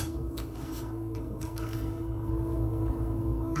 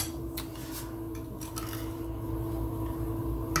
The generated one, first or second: first